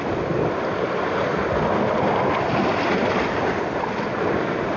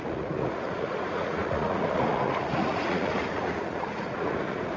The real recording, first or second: first